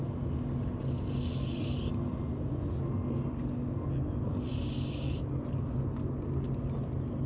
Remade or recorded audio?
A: recorded